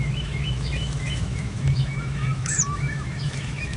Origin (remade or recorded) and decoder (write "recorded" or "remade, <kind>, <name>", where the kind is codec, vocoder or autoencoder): remade, autoencoder, DAC-VAE